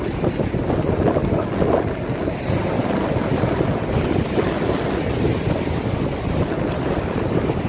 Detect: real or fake real